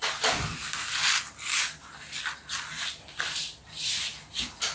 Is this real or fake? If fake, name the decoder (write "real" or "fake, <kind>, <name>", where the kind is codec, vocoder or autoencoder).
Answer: real